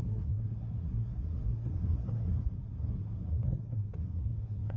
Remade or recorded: remade